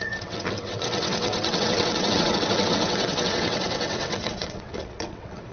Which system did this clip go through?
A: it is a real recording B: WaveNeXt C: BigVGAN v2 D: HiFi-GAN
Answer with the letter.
B